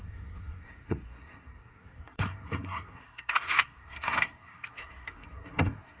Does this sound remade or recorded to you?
remade